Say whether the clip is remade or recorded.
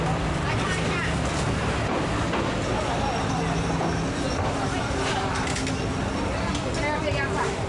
recorded